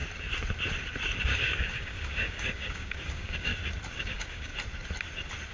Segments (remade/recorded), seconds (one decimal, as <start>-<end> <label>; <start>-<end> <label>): 0.0-1.2 recorded; 1.2-3.5 remade; 3.5-4.0 recorded; 4.0-4.5 remade; 4.5-5.5 recorded